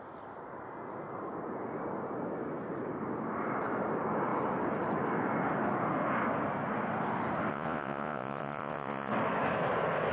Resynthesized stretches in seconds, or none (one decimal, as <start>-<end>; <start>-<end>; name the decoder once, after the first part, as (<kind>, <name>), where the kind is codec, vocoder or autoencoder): 7.5-9.1 (vocoder, Vocos)